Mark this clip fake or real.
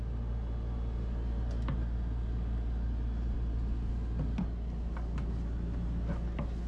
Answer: real